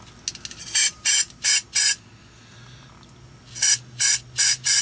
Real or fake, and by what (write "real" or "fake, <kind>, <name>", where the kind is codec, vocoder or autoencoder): real